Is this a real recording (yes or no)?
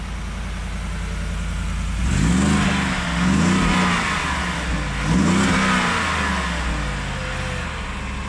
yes